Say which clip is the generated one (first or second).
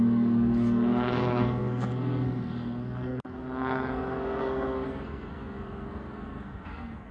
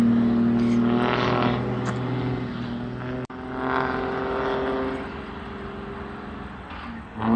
first